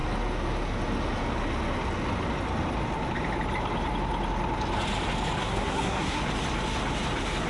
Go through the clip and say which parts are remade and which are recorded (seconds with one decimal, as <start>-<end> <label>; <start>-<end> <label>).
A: 0.0-5.4 recorded; 5.4-6.2 remade; 6.2-7.5 recorded